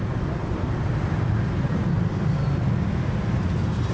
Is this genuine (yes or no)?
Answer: yes